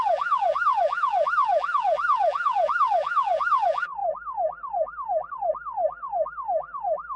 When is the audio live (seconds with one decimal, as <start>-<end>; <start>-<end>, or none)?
none